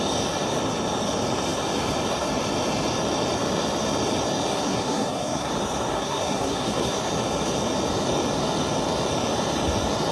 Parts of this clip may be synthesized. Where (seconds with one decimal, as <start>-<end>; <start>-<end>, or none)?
4.5-5.5; 5.9-7.0